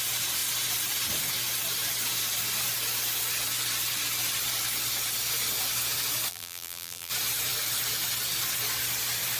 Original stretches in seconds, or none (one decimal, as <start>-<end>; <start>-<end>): 0.0-6.3; 7.1-9.4